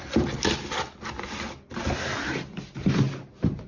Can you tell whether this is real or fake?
real